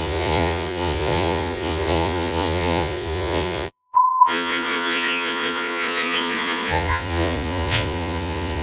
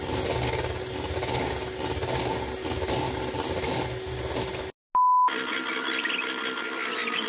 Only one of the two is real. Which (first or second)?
second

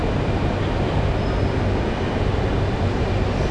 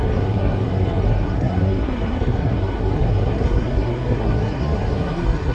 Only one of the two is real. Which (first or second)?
first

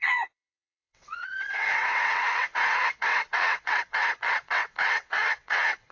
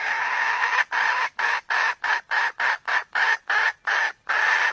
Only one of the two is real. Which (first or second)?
second